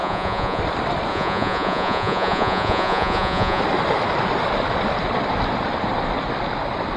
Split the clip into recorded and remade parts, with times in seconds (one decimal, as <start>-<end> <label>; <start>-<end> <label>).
0.0-0.6 remade; 0.6-1.1 recorded; 1.1-3.6 remade; 3.6-7.0 recorded